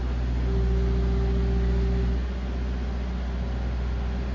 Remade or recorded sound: recorded